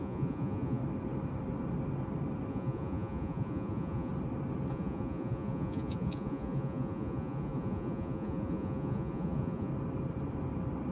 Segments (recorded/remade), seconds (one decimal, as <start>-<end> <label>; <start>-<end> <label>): 0.0-0.8 remade; 0.8-2.5 recorded; 2.5-4.1 remade; 4.1-4.7 recorded; 4.7-9.7 remade; 9.7-10.9 recorded